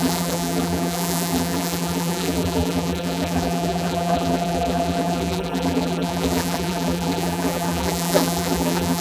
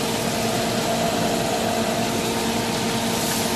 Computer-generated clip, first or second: first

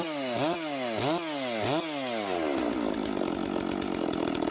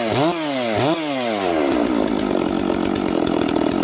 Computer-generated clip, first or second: second